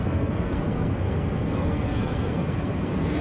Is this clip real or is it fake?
fake